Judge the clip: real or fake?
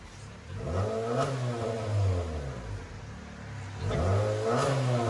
real